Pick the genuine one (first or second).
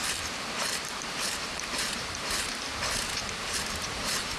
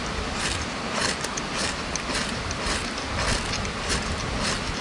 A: second